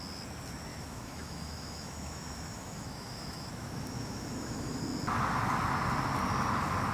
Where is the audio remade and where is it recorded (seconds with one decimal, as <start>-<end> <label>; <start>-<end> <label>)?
0.0-0.7 recorded; 0.7-4.8 remade; 4.8-6.9 recorded